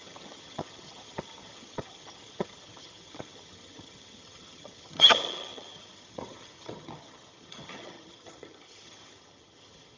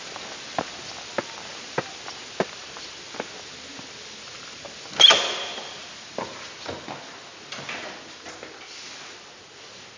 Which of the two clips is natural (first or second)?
second